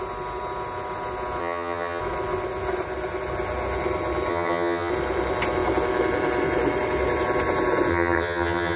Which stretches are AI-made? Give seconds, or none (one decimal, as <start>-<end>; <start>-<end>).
1.4-2.0; 4.3-4.9; 7.9-8.8